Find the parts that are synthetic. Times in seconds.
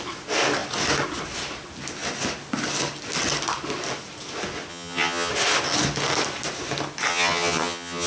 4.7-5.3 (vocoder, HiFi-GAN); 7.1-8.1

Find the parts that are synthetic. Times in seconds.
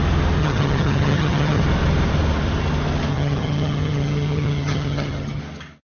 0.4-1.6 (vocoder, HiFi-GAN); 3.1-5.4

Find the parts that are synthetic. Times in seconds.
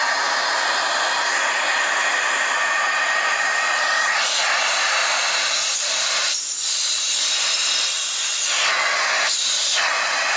none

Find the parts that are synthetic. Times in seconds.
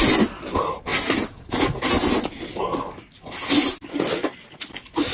none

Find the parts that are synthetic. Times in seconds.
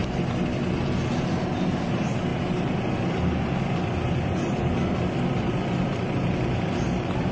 none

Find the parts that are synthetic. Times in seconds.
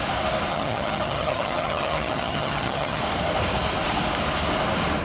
0.5-3.0 (vocoder, HiFi-GAN)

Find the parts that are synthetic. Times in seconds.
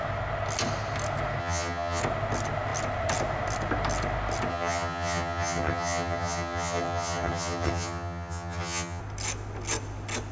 1.4-2.0 (vocoder, HiFi-GAN); 4.5-9.0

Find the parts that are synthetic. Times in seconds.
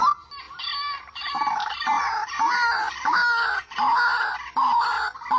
none